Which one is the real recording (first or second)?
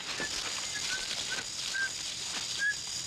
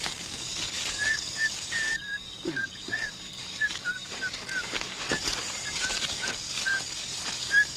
first